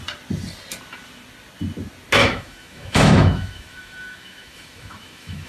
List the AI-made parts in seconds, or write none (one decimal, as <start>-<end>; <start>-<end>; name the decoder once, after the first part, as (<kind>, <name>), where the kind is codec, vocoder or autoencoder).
2.2-5.5 (autoencoder, DAC-VAE)